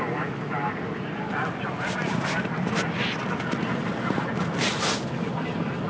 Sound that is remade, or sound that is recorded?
recorded